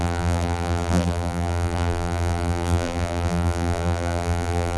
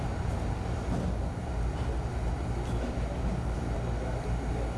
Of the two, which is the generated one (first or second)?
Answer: first